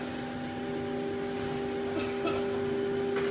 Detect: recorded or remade recorded